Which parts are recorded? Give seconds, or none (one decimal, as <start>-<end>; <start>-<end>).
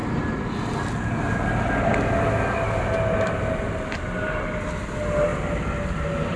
0.0-6.4